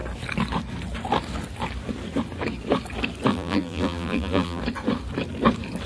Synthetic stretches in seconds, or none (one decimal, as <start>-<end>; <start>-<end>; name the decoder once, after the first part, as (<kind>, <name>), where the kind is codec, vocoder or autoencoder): 3.3-4.6 (vocoder, BigVGAN v2)